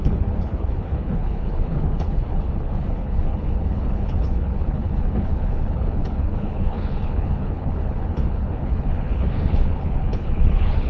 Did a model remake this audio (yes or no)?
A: yes